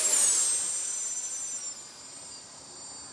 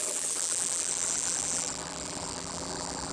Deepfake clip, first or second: second